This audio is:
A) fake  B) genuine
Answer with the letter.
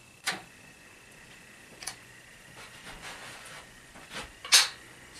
A